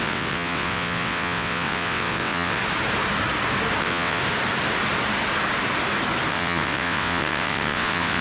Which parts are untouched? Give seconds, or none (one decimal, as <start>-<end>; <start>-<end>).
2.6-3.8; 4.2-6.3